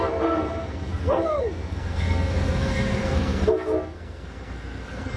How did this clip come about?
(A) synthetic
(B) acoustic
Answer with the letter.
A